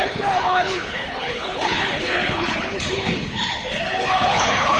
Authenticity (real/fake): fake